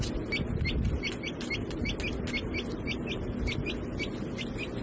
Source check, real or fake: real